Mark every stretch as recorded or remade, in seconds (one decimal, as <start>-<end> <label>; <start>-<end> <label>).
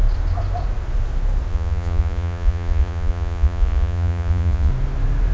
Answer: 0.0-1.5 recorded; 1.5-4.7 remade; 4.7-5.3 recorded